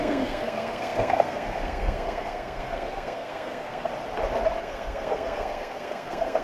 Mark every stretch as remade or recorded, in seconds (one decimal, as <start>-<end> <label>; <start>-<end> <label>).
0.0-3.9 remade; 3.9-4.6 recorded; 4.6-6.4 remade